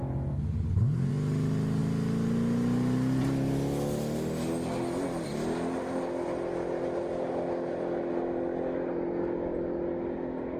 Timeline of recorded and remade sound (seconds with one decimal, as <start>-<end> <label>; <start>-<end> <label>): 0.0-10.6 recorded